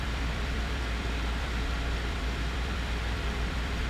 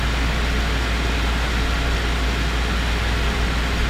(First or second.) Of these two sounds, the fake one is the first